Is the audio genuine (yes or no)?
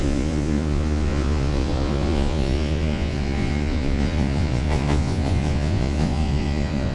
no